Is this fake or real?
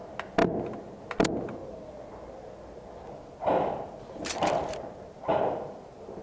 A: real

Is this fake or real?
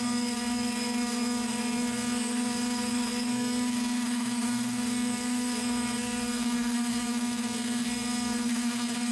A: fake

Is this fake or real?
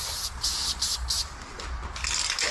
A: real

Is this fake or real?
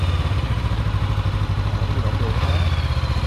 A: real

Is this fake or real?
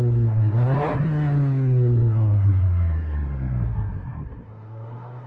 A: fake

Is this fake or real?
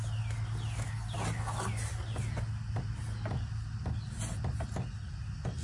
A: real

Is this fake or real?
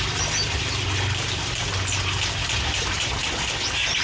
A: real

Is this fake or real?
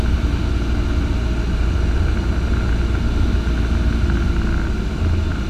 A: real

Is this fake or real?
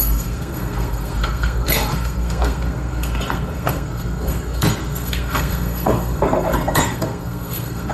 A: fake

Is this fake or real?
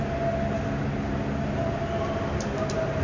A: real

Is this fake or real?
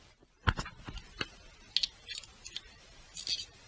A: real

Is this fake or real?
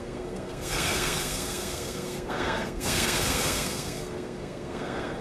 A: fake